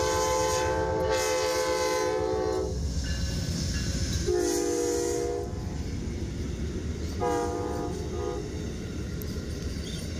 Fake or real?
real